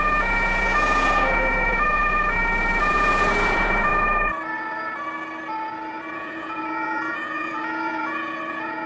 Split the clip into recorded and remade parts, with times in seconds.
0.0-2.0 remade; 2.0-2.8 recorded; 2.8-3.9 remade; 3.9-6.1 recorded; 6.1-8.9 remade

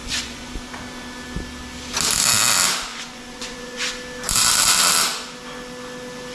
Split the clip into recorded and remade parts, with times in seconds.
0.0-0.5 remade; 0.5-2.9 recorded; 2.9-3.8 remade; 3.8-6.3 recorded

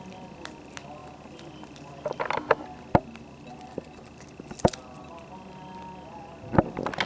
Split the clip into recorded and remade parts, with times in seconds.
0.0-7.1 recorded

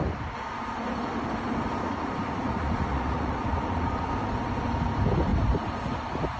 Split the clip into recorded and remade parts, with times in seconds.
0.0-1.8 recorded; 1.8-4.1 remade; 4.1-6.4 recorded

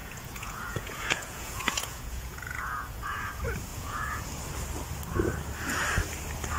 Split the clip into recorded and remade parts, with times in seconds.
0.0-3.2 remade; 3.2-3.7 recorded; 3.7-4.3 remade; 4.3-6.6 recorded

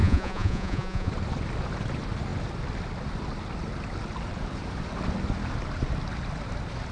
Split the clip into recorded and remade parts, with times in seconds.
0.0-1.1 remade; 1.1-6.9 recorded

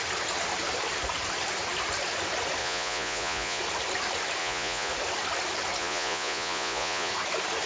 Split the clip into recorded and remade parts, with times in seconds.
0.0-2.6 recorded; 2.6-3.6 remade; 3.6-4.4 recorded; 4.4-4.9 remade; 4.9-5.8 recorded; 5.8-7.1 remade; 7.1-7.7 recorded